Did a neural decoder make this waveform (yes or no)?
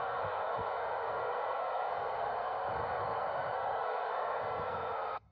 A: yes